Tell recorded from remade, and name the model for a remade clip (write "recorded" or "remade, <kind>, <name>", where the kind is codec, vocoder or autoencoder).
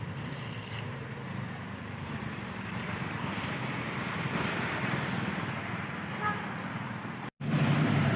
remade, vocoder, BigVGAN v2